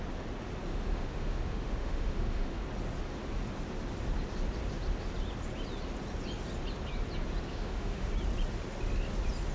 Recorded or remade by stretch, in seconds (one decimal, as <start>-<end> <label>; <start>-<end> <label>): 0.0-0.7 recorded; 0.7-2.6 remade; 2.6-7.5 recorded; 7.5-8.1 remade; 8.1-9.5 recorded